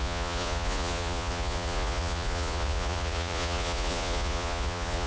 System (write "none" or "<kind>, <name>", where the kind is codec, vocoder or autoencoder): vocoder, Vocos